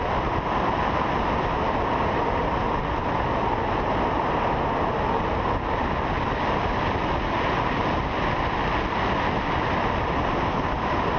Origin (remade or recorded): recorded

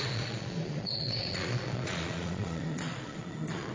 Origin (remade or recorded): remade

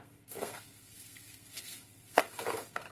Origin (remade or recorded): remade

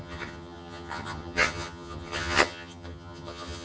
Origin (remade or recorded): remade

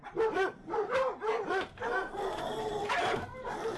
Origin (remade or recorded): remade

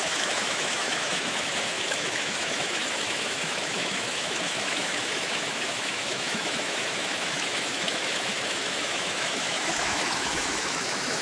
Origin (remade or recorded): remade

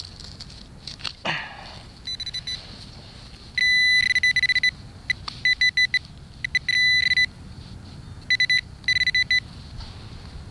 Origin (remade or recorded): recorded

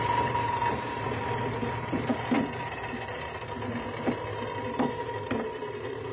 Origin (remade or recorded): recorded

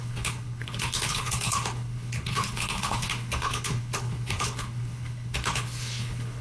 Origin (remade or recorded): remade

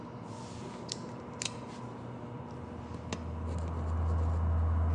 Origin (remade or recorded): recorded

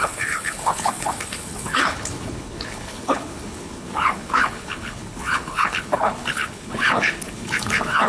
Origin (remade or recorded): remade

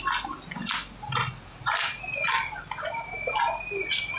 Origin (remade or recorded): recorded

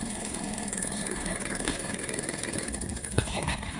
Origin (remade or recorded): remade